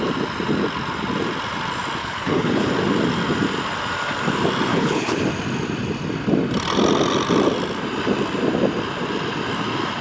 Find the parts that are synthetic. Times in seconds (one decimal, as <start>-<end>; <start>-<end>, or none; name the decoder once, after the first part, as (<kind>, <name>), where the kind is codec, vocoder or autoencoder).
2.0-2.7 (codec, HILCodec); 4.7-5.3